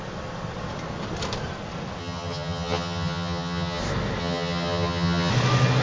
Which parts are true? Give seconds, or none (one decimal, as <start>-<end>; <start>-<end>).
0.0-2.0; 3.8-4.2; 5.3-5.8